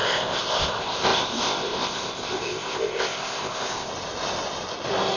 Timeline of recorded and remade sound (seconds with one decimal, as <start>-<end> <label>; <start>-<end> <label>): 0.0-3.9 remade; 3.9-5.2 recorded